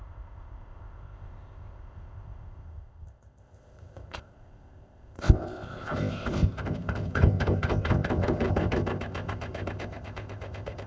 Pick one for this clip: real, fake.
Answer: fake